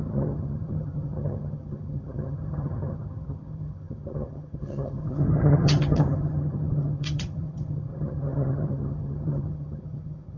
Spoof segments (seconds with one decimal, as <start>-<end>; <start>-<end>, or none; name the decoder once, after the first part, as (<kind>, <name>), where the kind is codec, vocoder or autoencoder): 0.0-10.4 (vocoder, HiFi-GAN)